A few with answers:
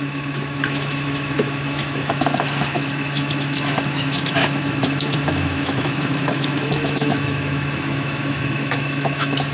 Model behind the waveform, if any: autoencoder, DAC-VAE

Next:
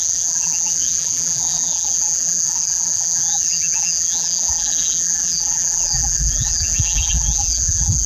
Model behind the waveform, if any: vocoder, BigVGAN v2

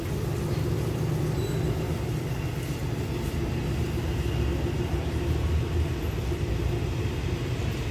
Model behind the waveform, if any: none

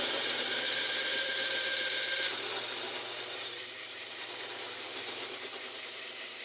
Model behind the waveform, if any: vocoder, BigVGAN v2